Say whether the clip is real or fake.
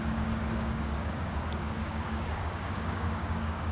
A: fake